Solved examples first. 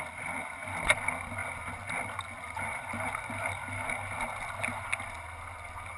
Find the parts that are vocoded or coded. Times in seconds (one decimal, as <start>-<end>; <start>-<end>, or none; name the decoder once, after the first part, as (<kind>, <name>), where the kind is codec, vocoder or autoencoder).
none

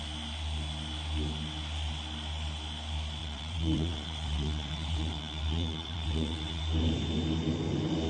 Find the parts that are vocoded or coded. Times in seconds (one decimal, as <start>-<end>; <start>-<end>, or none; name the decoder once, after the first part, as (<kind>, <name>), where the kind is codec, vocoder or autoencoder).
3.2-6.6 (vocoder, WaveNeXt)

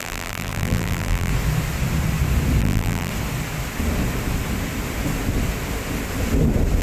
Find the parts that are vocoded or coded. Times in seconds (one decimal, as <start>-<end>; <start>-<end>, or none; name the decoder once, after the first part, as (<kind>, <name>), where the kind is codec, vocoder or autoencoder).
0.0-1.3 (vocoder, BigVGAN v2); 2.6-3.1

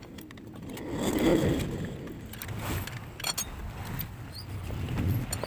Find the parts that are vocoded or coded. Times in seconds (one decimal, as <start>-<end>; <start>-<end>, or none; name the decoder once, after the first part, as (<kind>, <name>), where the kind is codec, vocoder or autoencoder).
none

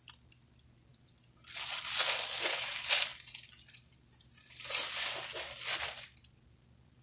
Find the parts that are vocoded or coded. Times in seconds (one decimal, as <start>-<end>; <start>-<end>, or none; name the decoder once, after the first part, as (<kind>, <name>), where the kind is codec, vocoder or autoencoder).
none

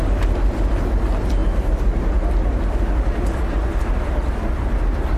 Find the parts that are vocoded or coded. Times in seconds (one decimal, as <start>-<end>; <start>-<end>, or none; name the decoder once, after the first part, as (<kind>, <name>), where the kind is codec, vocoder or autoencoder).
none

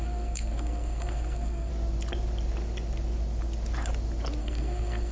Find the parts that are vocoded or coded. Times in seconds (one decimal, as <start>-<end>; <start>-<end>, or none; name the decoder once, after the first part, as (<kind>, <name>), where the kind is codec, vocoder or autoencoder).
0.0-1.7 (codec, SNAC); 4.4-5.1

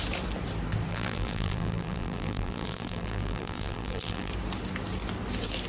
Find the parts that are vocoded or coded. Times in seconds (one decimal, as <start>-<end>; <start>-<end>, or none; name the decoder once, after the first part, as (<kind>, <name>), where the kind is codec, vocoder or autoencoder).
0.9-4.3 (vocoder, BigVGAN v2)